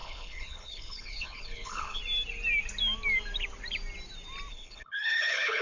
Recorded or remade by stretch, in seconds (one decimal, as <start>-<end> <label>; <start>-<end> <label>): 0.0-2.0 remade; 2.0-4.5 recorded; 4.5-5.6 remade

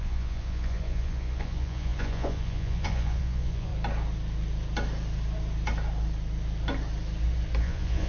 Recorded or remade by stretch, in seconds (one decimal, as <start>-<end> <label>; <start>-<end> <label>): 0.0-3.7 remade; 3.7-7.6 recorded; 7.6-8.1 remade

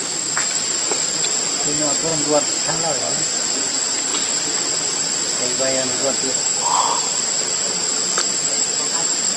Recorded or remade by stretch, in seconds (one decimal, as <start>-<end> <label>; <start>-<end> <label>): 0.0-9.4 recorded

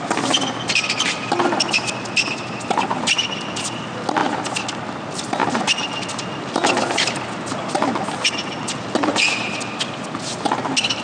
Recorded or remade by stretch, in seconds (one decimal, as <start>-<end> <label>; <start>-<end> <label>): 0.0-11.0 recorded

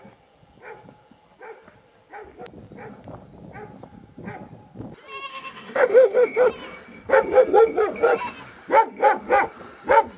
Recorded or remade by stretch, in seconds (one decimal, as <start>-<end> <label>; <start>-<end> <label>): 0.0-5.3 recorded; 5.3-6.5 remade; 6.5-10.2 recorded

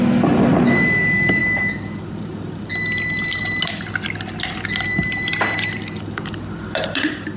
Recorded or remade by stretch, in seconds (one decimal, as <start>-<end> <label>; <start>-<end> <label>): 0.0-7.4 remade

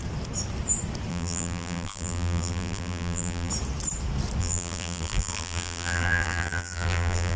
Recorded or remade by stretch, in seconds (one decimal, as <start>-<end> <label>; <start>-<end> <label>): 0.0-1.1 recorded; 1.1-3.5 remade; 3.5-4.4 recorded; 4.4-7.4 remade

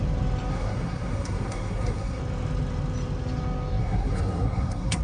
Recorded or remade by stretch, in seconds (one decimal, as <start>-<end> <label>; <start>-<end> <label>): 0.0-0.5 recorded; 0.5-2.2 remade; 2.2-3.8 recorded; 3.8-5.0 remade